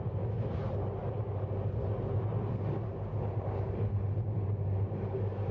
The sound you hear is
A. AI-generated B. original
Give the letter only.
B